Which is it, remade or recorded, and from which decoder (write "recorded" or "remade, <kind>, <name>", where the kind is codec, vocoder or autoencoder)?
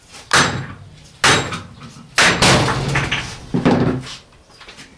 recorded